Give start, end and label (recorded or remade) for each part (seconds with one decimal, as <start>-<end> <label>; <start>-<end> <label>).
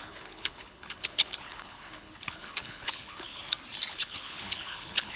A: 0.0-3.4 remade; 3.4-3.9 recorded; 3.9-5.2 remade